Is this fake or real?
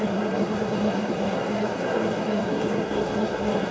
fake